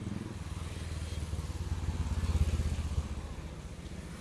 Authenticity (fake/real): real